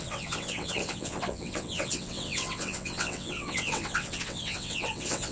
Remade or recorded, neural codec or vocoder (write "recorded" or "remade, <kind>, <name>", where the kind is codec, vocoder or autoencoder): remade, vocoder, WaveNeXt